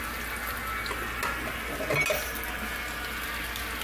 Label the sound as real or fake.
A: real